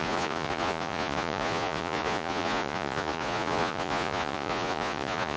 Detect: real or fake fake